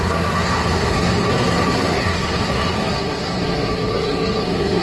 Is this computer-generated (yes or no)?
yes